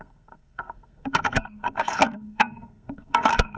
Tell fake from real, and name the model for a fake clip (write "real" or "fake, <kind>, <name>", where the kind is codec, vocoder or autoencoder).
fake, codec, SNAC